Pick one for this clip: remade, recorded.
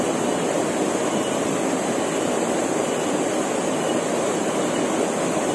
recorded